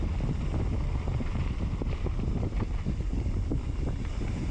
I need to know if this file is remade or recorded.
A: recorded